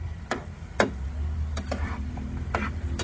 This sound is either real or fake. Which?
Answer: real